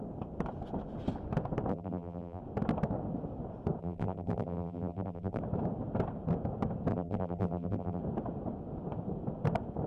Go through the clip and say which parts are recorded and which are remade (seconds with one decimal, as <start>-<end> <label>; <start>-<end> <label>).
0.0-1.7 recorded; 1.7-2.4 remade; 2.4-3.8 recorded; 3.8-5.4 remade; 5.4-6.9 recorded; 6.9-8.0 remade; 8.0-9.9 recorded